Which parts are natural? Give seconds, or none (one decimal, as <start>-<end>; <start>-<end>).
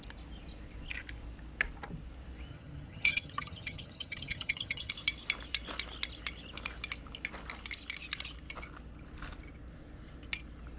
0.0-2.5; 4.9-10.8